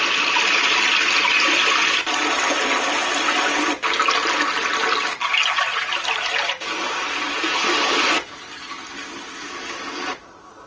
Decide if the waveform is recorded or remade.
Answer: recorded